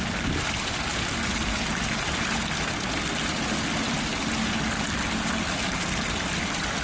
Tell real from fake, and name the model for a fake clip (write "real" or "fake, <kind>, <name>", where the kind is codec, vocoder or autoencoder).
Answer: real